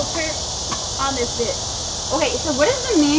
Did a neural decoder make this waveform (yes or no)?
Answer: no